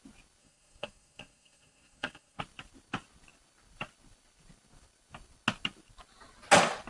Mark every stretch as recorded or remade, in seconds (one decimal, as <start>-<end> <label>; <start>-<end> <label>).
0.0-0.4 recorded; 0.4-2.4 remade; 2.4-6.9 recorded